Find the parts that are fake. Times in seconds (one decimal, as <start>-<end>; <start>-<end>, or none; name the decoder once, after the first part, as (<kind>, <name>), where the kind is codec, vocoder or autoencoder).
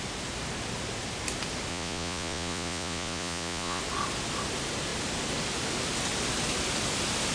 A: 1.7-3.8 (vocoder, Vocos)